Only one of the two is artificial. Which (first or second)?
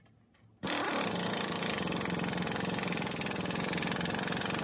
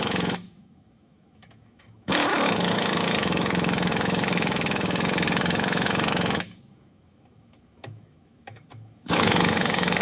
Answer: second